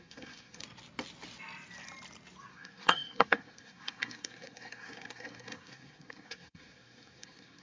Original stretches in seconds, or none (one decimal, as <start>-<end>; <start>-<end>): 0.6-2.5